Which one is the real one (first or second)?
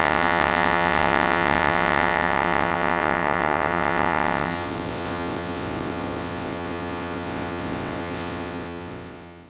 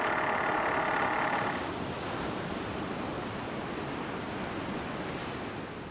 second